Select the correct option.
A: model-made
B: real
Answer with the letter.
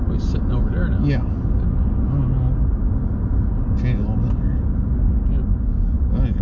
B